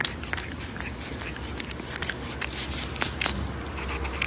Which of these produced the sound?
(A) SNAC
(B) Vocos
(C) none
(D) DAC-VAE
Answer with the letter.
C